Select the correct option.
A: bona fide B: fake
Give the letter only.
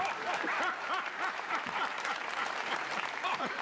B